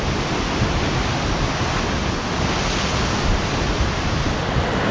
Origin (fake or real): real